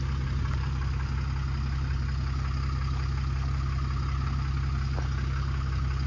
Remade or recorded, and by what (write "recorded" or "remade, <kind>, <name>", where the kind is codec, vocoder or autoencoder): recorded